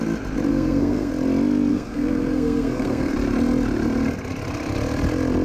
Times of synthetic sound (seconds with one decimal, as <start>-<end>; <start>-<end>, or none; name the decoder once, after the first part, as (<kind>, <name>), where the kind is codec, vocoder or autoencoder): 0.5-1.1 (codec, SNAC); 1.7-3.1